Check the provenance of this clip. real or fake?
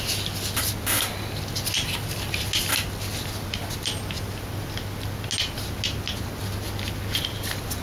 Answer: real